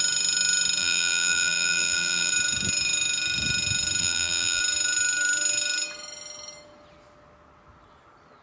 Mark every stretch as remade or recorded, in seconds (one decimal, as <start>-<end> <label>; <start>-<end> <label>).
0.0-0.8 recorded; 0.8-2.3 remade; 2.3-4.0 recorded; 4.0-4.6 remade; 4.6-8.4 recorded